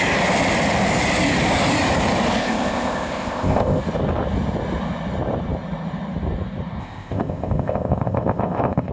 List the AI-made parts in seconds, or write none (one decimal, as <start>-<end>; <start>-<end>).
2.4-3.8; 6.8-8.9